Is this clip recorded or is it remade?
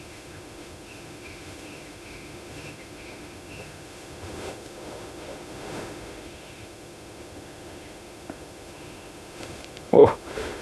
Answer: remade